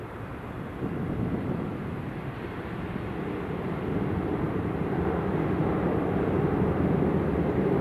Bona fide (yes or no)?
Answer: yes